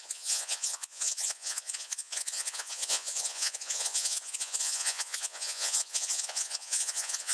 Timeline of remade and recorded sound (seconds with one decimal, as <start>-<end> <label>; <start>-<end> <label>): 0.0-7.3 remade